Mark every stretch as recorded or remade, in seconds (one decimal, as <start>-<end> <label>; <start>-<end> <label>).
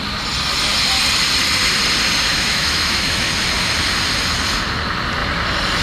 0.0-2.3 recorded; 2.3-3.3 remade; 3.3-5.8 recorded